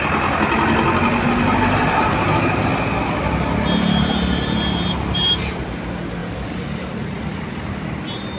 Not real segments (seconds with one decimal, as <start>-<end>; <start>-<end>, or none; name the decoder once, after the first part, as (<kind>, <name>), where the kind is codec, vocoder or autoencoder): none